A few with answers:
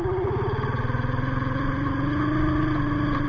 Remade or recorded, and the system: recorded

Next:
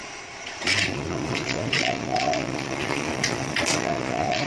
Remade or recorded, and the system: remade, vocoder, Vocos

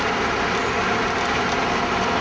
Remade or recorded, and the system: recorded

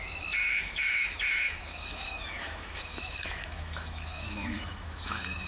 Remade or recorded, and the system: remade, autoencoder, DAC-VAE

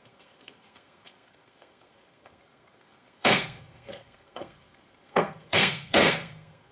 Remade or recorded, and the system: remade, codec, SNAC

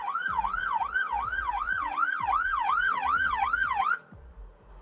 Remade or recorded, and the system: remade, vocoder, Vocos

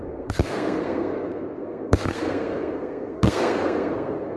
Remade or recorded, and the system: remade, codec, SNAC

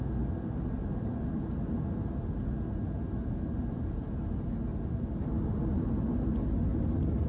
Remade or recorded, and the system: recorded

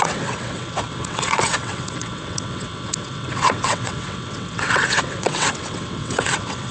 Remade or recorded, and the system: remade, vocoder, WaveNeXt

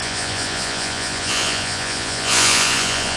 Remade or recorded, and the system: remade, vocoder, Vocos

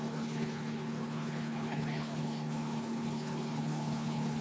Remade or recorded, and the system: remade, codec, HILCodec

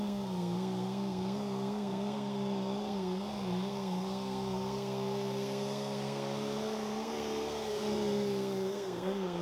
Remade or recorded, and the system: remade, codec, SNAC